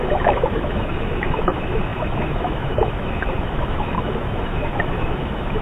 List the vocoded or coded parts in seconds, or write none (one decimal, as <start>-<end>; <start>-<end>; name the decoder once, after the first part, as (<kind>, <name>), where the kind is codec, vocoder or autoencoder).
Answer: 0.0-5.6 (autoencoder, DAC-VAE)